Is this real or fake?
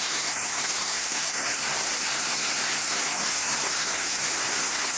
fake